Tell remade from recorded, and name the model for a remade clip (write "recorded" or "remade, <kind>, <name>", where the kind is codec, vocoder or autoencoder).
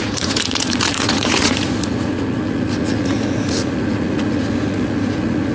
remade, vocoder, Vocos